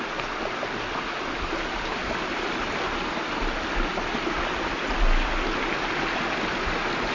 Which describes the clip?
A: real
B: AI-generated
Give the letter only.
A